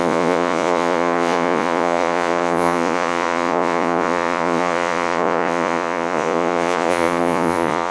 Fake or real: fake